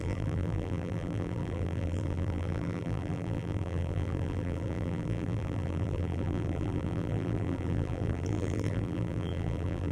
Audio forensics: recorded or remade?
remade